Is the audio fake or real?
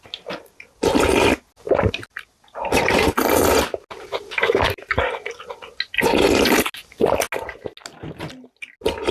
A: real